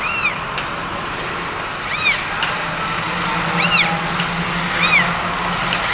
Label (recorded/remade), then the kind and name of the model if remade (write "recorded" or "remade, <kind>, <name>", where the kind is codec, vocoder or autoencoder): recorded